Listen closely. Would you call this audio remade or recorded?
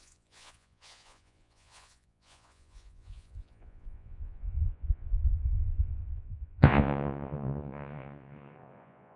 remade